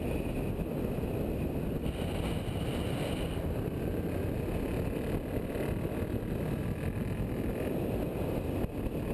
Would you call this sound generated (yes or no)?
no